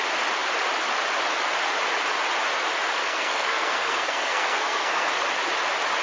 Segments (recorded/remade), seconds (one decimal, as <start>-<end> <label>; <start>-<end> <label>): 0.0-3.0 recorded; 3.0-5.1 remade; 5.1-6.0 recorded

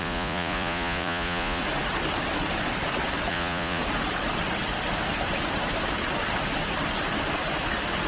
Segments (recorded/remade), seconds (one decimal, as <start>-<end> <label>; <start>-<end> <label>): 0.0-1.6 remade; 1.6-3.3 recorded; 3.3-3.8 remade; 3.8-8.1 recorded